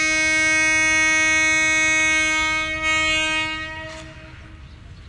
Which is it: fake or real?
real